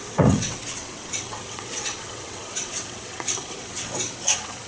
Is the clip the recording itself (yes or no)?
no